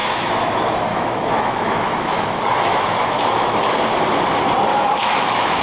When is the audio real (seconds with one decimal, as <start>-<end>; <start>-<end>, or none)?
0.5-0.9; 3.7-4.7

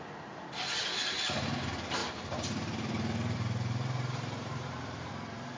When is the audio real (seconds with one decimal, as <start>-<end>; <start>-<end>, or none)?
0.0-2.0; 5.1-5.6

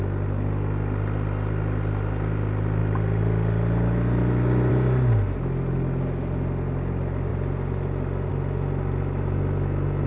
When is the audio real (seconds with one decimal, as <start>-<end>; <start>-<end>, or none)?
0.0-10.1

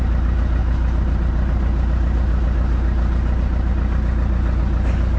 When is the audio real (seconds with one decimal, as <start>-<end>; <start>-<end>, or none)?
0.0-5.2

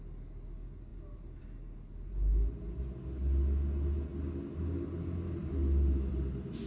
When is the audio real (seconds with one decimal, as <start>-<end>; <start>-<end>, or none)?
0.0-6.7

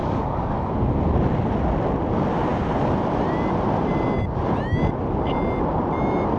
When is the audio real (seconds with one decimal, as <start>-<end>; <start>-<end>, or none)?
0.7-6.4